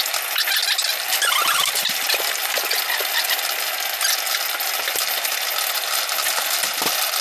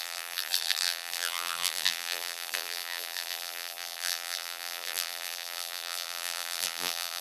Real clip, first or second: first